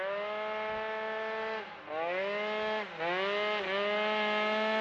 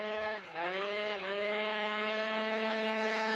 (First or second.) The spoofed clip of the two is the second